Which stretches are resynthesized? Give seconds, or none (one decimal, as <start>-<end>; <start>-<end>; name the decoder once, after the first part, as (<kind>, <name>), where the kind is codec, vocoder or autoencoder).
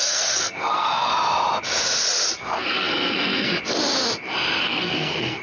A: 0.0-1.1 (codec, SNAC); 2.4-3.5; 4.6-5.4